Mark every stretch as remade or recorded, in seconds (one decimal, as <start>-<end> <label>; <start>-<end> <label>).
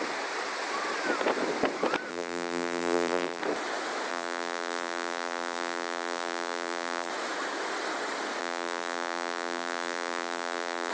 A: 0.0-2.1 recorded; 2.1-3.4 remade; 3.4-4.1 recorded; 4.1-7.1 remade; 7.1-8.4 recorded; 8.4-10.9 remade